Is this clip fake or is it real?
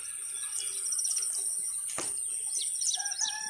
real